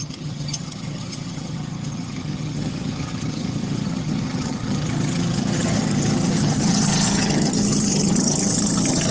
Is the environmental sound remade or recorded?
remade